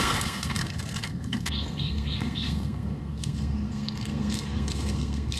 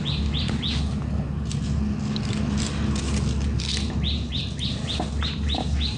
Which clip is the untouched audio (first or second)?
second